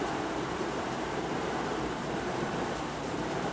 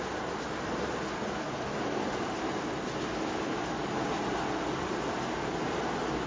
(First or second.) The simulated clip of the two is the first